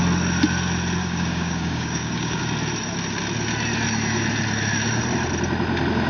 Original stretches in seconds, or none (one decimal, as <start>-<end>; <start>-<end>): 0.0-1.0; 2.4-6.1